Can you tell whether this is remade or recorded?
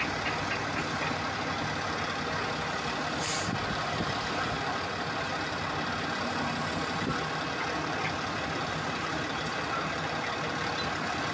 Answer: recorded